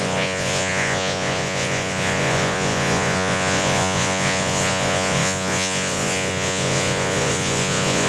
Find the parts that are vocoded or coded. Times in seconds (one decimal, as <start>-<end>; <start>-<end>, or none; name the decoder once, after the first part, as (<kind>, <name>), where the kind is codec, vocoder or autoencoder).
0.0-8.1 (vocoder, Vocos)